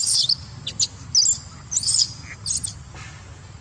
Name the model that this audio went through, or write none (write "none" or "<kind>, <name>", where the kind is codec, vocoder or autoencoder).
none